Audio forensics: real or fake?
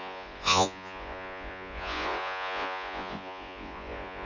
fake